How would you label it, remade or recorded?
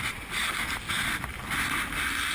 recorded